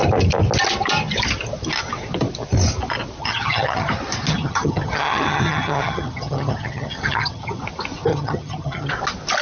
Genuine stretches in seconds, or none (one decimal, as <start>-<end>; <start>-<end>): 0.0-3.2; 3.9-4.3; 7.6-8.1; 8.9-9.4